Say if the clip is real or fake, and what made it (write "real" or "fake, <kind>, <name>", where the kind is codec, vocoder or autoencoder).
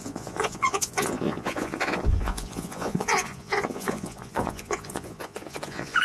fake, vocoder, Vocos